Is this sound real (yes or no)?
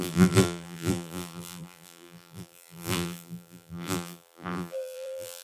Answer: no